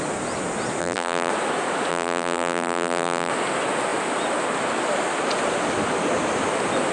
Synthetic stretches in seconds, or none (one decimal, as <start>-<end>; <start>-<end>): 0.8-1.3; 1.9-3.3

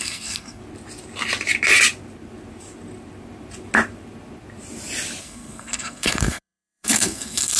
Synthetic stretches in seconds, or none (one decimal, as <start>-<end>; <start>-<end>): 0.0-0.6; 5.2-7.6

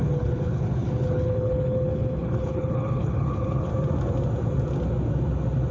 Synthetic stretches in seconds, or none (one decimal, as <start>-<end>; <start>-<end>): 0.0-3.7

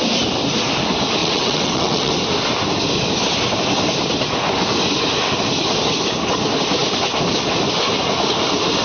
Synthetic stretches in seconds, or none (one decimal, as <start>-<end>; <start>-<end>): 1.2-2.1

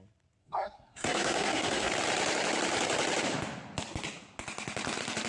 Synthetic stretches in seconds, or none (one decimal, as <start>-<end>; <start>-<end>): 0.4-1.9

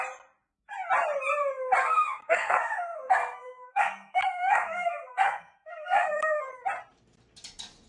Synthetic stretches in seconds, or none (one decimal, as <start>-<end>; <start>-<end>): 1.8-6.5

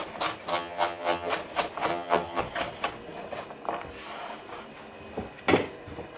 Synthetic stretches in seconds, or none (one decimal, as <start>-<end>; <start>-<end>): 0.5-1.3; 1.9-2.4

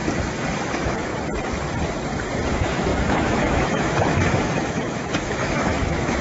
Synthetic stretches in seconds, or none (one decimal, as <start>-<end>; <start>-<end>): 0.6-1.1; 2.5-6.2